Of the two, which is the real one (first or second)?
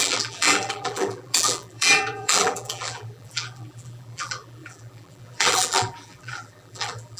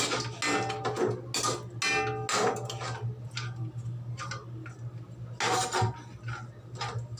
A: second